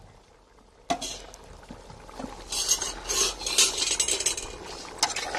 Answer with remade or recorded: recorded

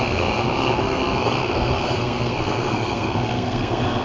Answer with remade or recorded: remade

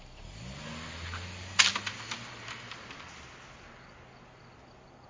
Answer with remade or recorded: recorded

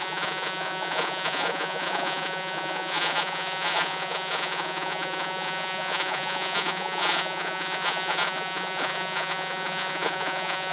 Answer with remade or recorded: remade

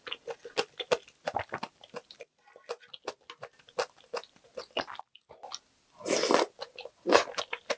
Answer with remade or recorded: recorded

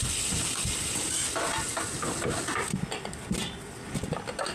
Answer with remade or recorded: recorded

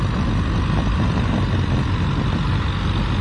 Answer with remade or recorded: recorded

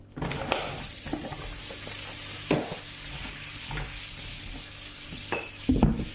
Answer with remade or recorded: recorded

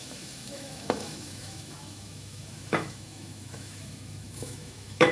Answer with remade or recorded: remade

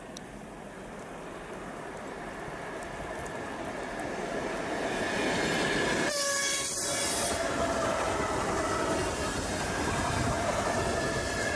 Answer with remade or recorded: recorded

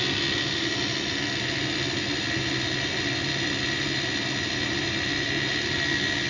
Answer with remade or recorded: recorded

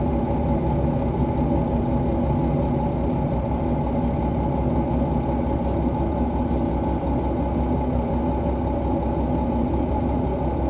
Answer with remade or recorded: recorded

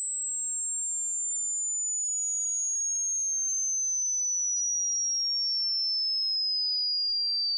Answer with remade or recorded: recorded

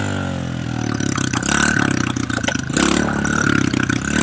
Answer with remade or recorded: recorded